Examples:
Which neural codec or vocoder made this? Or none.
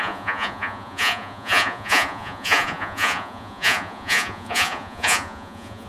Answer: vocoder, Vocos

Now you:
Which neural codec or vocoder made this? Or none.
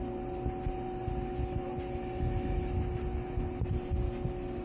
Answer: none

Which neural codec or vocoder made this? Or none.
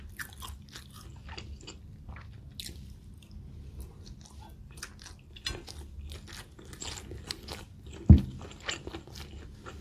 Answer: none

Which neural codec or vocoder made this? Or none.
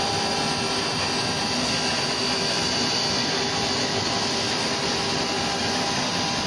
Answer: none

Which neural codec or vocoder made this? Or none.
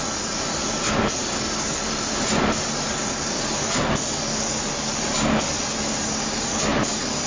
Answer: none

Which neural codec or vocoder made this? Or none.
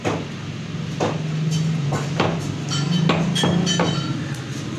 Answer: none